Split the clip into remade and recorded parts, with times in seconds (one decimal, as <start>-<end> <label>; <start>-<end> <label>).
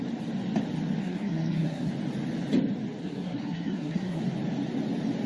0.0-1.0 recorded; 1.0-1.9 remade; 1.9-3.0 recorded; 3.0-4.2 remade; 4.2-5.3 recorded